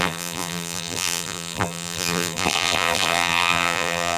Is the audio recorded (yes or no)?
no